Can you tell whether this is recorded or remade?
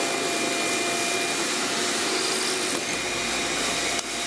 recorded